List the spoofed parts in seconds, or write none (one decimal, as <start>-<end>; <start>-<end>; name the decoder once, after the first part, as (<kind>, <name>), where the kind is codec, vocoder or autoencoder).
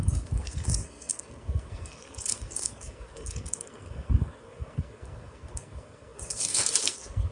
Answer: 0.0-7.3 (codec, SNAC)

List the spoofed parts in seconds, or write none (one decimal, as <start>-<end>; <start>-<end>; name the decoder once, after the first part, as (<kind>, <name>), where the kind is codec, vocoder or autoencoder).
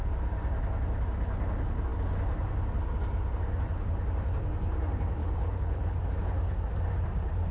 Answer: 5.2-6.0 (codec, HILCodec)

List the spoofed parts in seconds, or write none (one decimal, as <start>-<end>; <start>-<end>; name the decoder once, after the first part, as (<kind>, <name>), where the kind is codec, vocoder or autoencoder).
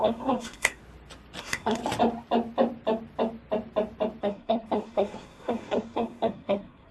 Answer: 0.0-0.8 (codec, SNAC); 1.4-1.8; 4.2-6.9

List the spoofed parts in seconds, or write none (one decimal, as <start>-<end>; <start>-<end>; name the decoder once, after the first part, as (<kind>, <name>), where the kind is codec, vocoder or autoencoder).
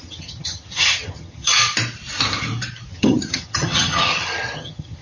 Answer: 0.0-1.6 (vocoder, HiFi-GAN); 2.9-5.0